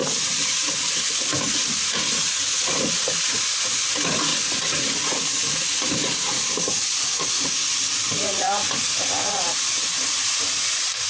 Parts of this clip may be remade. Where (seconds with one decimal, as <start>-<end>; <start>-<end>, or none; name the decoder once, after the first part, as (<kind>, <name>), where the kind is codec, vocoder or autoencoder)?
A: 0.0-7.6 (vocoder, Vocos); 8.2-11.1